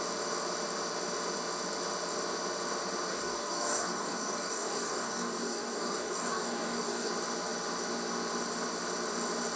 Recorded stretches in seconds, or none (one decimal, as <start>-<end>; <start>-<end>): 0.0-3.1; 7.1-9.6